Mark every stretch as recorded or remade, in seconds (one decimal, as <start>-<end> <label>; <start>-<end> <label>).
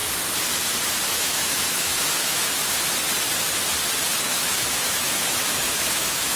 0.0-1.1 recorded; 1.1-2.6 remade; 2.6-4.2 recorded; 4.2-6.4 remade